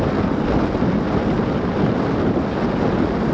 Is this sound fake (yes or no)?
no